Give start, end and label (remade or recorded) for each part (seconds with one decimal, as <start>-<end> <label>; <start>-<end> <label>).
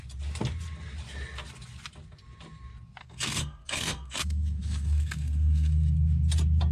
0.0-3.0 recorded; 3.0-5.9 remade; 5.9-6.7 recorded